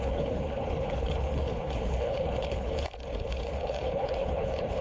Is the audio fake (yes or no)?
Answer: yes